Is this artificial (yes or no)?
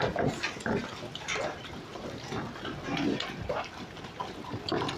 no